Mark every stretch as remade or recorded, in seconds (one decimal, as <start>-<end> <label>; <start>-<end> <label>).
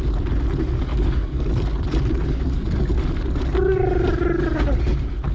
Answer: 0.0-0.9 recorded; 0.9-1.5 remade; 1.5-2.2 recorded; 2.2-2.9 remade; 2.9-5.3 recorded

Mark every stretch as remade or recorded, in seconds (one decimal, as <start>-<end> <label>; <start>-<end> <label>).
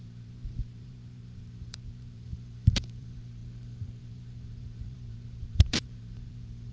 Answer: 0.0-3.4 remade; 3.4-4.0 recorded; 4.0-6.7 remade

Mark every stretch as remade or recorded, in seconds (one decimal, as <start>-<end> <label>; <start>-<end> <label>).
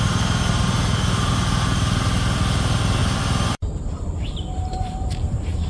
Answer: 0.0-3.0 recorded; 3.0-5.7 remade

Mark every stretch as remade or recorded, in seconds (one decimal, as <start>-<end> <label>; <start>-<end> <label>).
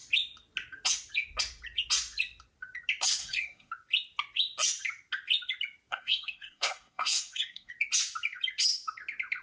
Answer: 0.0-3.2 recorded; 3.2-3.7 remade; 3.7-5.9 recorded; 5.9-7.7 remade; 7.7-9.4 recorded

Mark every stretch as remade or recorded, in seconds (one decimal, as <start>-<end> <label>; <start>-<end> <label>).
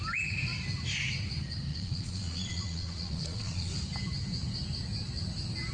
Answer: 0.0-1.7 recorded; 1.7-3.7 remade; 3.7-5.7 recorded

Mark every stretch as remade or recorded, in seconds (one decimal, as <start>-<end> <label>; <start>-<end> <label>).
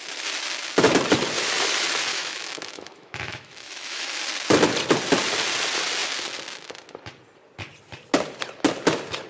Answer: 0.0-2.1 recorded; 2.1-4.2 remade; 4.2-9.3 recorded